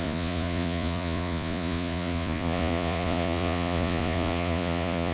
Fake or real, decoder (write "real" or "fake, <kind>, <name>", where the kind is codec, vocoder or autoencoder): fake, vocoder, Vocos